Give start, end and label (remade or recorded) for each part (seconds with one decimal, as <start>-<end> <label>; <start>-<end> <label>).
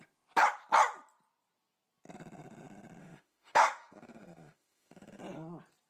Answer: 0.0-3.0 recorded; 3.0-5.2 remade; 5.2-5.9 recorded